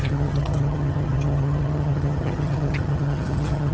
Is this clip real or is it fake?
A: fake